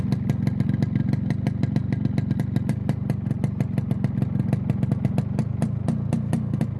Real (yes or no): yes